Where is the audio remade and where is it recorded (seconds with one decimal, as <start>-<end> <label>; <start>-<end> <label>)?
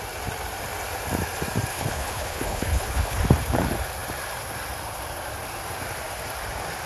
0.0-1.7 recorded; 1.7-3.2 remade; 3.2-6.9 recorded